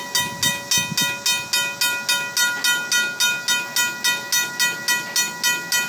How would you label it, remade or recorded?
recorded